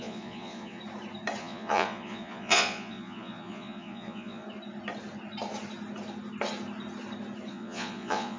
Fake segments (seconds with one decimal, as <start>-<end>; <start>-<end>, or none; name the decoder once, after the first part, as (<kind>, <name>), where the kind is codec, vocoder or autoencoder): 0.0-0.8 (vocoder, Vocos); 1.4-4.4; 7.5-8.4